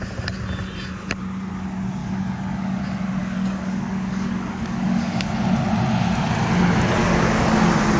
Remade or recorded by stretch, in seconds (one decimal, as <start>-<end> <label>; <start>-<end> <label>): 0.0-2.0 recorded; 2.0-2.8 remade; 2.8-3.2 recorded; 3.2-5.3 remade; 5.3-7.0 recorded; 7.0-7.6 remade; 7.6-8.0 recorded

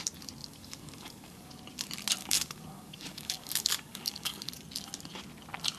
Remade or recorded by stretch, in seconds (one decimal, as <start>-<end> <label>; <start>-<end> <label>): 0.0-0.4 recorded; 0.4-1.5 remade; 1.5-2.2 recorded; 2.2-4.5 remade; 4.5-5.8 recorded

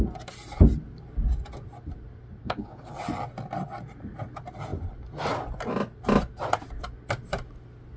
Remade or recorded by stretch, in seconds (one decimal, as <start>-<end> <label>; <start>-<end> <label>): 0.0-2.4 recorded; 2.4-2.9 remade; 2.9-8.0 recorded